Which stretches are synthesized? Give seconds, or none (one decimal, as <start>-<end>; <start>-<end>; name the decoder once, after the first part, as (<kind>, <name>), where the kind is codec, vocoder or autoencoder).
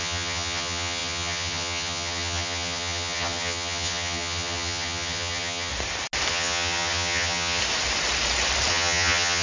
0.0-5.7 (vocoder, HiFi-GAN); 6.3-7.6; 8.7-9.4